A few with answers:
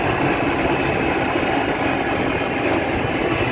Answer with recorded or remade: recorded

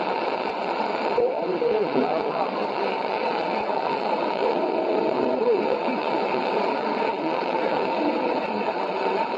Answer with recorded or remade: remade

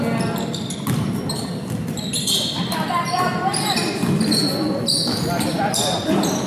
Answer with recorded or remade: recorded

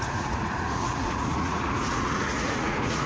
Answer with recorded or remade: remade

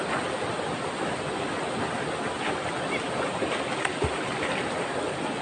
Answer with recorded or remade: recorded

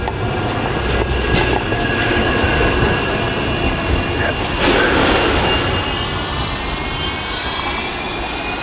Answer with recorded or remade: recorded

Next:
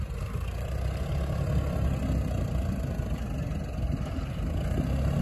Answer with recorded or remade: recorded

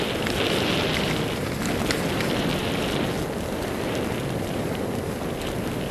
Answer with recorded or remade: recorded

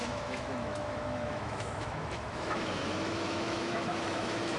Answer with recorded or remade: remade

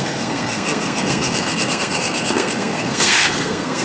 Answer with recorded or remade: remade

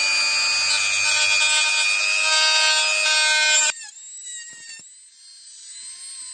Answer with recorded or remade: recorded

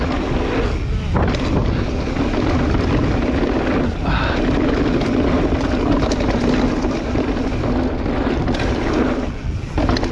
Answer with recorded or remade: recorded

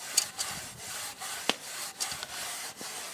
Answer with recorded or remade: recorded